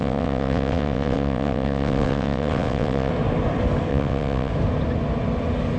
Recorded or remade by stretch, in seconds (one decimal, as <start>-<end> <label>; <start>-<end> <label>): 0.0-3.1 remade; 3.1-3.9 recorded; 3.9-4.5 remade; 4.5-5.8 recorded